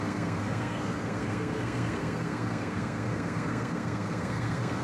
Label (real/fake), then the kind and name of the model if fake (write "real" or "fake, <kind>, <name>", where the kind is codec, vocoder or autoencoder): fake, codec, SNAC